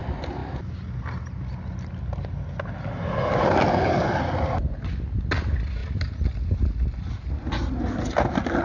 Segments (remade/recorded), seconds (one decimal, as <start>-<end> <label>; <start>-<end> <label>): 0.0-8.6 recorded